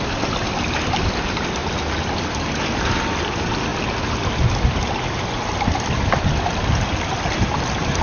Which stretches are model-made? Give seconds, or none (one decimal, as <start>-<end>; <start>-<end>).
none